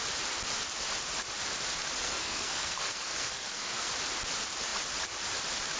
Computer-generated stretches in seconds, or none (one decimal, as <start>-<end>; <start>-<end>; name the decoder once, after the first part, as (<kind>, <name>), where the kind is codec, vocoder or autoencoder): 2.0-3.9 (codec, SNAC)